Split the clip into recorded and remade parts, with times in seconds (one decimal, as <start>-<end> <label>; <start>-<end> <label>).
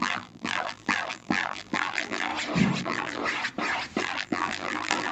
0.0-2.3 remade; 2.3-2.8 recorded; 2.8-3.2 remade; 3.2-4.0 recorded; 4.0-5.1 remade